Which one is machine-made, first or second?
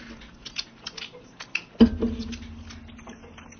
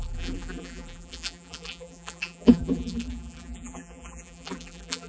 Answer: second